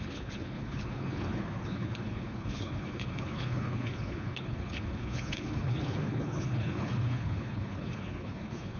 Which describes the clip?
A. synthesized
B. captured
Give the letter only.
A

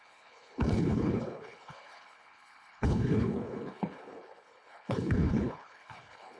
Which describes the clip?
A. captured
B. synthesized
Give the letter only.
B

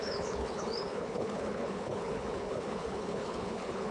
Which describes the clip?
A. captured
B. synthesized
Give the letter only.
B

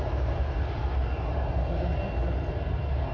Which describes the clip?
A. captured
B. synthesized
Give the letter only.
A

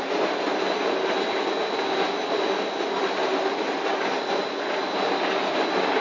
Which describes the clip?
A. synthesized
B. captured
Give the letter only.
B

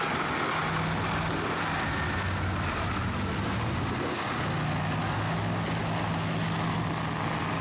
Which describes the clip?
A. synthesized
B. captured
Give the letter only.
B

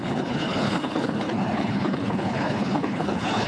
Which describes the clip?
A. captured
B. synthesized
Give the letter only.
B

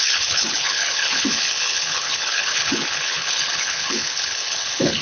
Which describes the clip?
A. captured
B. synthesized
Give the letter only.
B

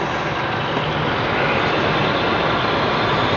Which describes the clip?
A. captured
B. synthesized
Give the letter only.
A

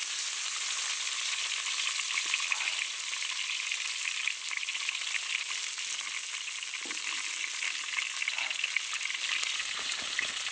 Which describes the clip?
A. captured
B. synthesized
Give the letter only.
A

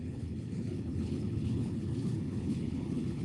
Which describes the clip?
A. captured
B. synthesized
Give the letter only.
B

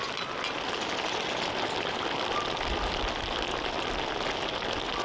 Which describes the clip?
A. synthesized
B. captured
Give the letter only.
B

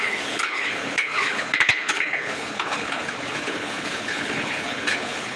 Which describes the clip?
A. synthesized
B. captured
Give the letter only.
A